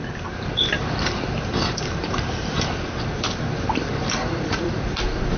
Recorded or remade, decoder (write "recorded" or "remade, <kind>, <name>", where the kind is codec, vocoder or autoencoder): remade, vocoder, BigVGAN v2